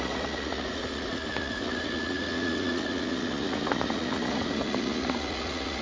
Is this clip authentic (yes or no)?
no